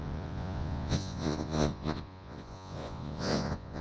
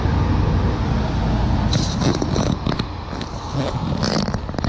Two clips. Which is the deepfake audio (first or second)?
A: first